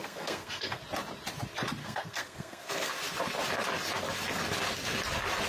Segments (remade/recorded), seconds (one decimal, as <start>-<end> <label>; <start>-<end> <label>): 0.0-0.8 remade; 0.8-1.8 recorded; 1.8-2.9 remade; 2.9-5.5 recorded